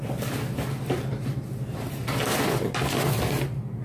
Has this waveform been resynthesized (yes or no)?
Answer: no